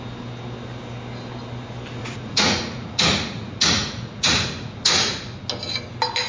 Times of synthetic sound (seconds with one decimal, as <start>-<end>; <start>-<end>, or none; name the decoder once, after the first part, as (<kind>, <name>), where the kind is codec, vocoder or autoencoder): 2.0-5.4 (vocoder, Vocos)